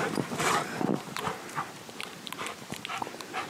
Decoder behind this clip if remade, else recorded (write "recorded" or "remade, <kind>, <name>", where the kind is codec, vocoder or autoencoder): remade, vocoder, BigVGAN v2